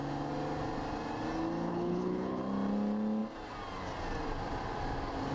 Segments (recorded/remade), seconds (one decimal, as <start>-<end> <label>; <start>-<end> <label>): 0.0-1.7 recorded; 1.7-2.4 remade; 2.4-5.3 recorded